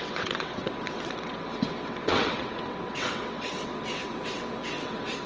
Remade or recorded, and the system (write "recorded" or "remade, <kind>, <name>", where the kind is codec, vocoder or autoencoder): remade, vocoder, WaveNeXt